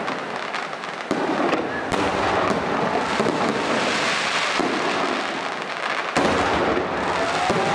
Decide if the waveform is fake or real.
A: real